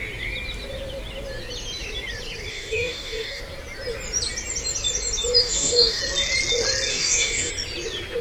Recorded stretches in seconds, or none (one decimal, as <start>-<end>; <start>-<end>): 0.0-2.5; 3.4-5.4; 6.0-6.9; 7.5-8.2